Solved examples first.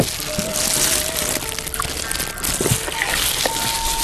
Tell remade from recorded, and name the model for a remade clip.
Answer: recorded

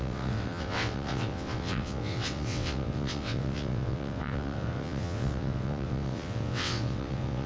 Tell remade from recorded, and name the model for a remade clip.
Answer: remade, vocoder, WaveNeXt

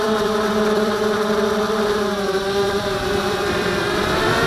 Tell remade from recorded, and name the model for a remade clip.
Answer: remade, vocoder, BigVGAN v2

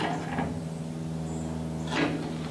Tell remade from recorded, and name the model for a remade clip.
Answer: recorded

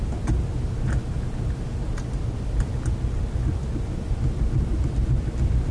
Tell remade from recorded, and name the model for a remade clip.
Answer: recorded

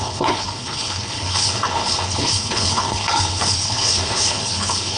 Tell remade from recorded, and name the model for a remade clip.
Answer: remade, codec, HILCodec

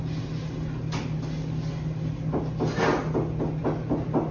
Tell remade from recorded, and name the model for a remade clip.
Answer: recorded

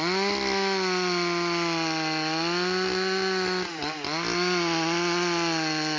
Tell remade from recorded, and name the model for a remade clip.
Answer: recorded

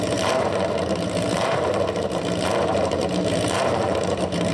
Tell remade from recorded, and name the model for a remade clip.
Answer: remade, vocoder, BigVGAN v2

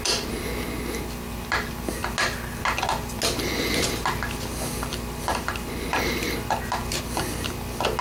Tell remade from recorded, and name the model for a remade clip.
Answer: recorded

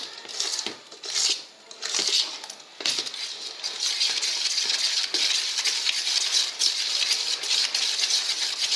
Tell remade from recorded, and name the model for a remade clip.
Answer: recorded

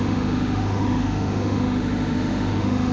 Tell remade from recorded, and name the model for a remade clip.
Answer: remade, autoencoder, DAC-VAE